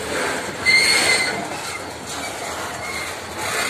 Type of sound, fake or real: real